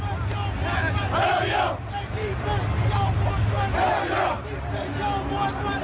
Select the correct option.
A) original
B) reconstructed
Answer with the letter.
A